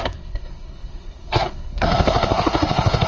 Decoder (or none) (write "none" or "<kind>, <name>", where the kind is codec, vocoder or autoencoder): codec, SNAC